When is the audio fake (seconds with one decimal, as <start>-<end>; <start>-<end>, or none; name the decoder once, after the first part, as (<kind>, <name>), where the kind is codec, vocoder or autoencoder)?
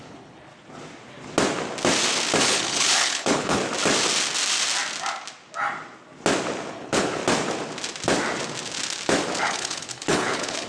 0.0-0.5 (codec, HILCodec); 2.4-3.6; 6.7-7.2; 9.4-10.7